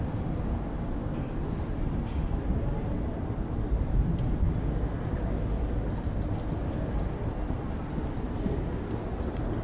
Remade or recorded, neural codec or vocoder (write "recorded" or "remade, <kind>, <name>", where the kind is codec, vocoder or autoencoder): recorded